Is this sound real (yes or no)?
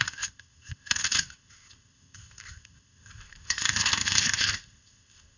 no